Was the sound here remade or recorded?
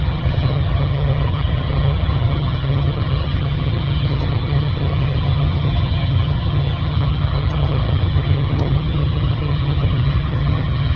remade